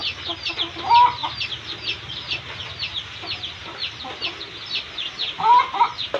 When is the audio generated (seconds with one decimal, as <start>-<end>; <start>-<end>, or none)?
none